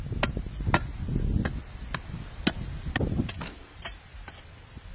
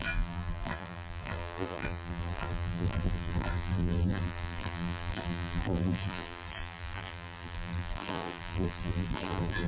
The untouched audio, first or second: first